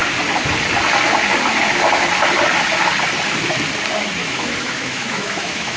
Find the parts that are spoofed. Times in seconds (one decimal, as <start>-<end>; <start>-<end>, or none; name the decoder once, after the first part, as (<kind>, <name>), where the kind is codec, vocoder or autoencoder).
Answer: 4.2-5.8 (autoencoder, DAC-VAE)